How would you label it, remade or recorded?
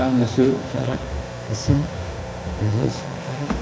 remade